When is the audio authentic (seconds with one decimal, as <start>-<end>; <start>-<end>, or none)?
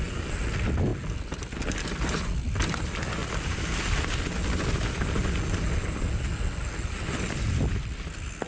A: 0.0-8.5